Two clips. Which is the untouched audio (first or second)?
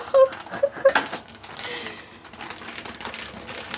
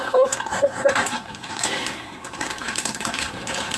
first